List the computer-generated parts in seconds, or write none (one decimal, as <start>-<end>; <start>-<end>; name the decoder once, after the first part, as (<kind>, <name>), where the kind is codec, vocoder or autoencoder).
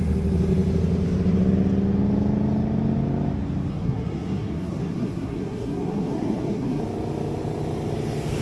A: 3.7-6.8 (codec, SNAC)